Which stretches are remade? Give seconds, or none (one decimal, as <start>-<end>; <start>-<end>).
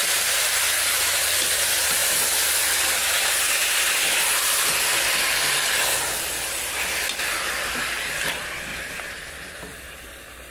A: 0.0-0.6; 8.7-9.9